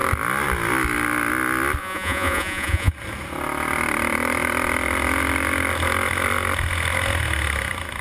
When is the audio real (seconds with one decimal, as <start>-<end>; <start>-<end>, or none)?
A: 0.0-1.8; 2.9-8.0